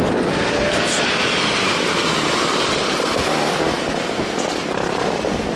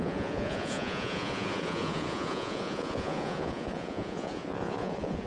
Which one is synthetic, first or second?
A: second